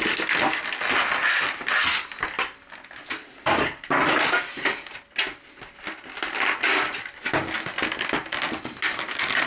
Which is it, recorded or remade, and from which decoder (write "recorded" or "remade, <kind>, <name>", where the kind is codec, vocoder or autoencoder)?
recorded